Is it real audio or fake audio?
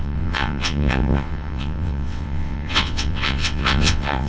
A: fake